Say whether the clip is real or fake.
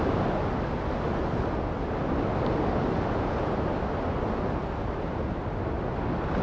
real